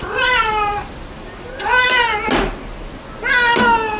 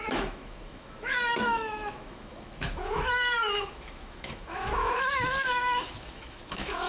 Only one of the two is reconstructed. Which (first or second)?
second